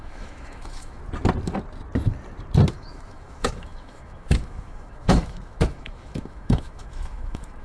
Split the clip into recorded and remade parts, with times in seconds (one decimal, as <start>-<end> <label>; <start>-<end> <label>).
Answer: 0.0-1.0 remade; 1.0-2.7 recorded; 2.7-7.6 remade